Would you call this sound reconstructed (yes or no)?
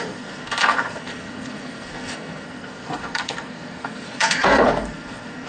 yes